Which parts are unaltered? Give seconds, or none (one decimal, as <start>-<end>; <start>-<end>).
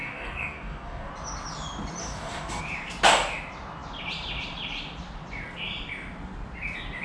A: 1.1-2.0; 2.6-7.0